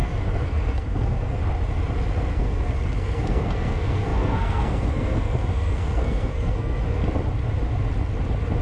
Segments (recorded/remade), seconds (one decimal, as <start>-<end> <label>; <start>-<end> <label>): 0.0-1.4 remade; 1.4-2.3 recorded; 2.3-7.0 remade; 7.0-8.6 recorded